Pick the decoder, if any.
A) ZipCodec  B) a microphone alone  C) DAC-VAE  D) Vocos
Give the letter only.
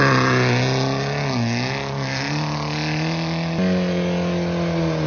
B